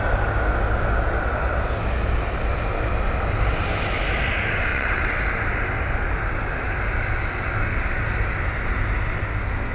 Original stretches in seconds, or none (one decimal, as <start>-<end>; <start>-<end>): 0.0-4.7; 5.2-9.7